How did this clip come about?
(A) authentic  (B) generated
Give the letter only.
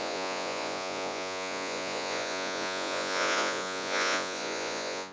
B